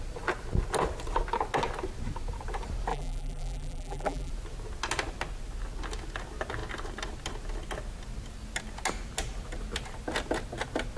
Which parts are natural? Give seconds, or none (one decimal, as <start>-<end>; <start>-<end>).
0.0-2.9; 4.3-11.0